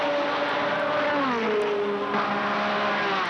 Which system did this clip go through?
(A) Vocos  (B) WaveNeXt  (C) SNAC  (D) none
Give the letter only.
D